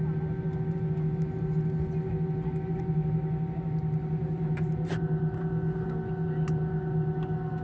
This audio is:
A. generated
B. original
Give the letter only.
B